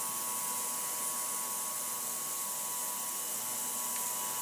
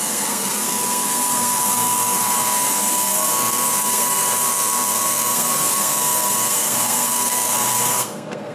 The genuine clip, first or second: first